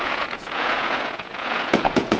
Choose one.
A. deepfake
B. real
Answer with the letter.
A